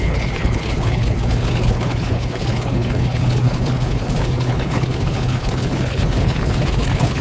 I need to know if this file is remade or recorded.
remade